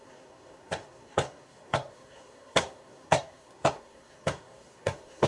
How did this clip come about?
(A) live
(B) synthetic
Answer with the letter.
B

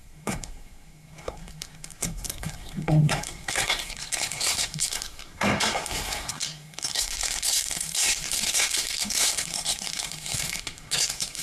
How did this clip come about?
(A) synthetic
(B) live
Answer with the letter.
A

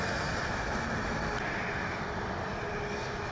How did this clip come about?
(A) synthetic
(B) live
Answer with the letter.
B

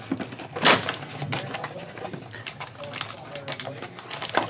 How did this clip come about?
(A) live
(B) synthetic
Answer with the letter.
A